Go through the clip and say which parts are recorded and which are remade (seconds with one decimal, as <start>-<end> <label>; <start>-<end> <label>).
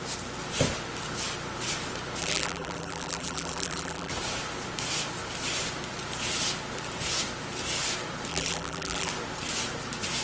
0.0-2.2 recorded; 2.2-4.1 remade; 4.1-8.3 recorded; 8.3-9.1 remade; 9.1-10.2 recorded